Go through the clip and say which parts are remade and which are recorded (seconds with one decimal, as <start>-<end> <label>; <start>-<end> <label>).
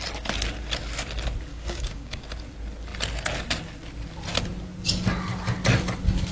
0.0-1.5 recorded; 1.5-2.2 remade; 2.2-6.3 recorded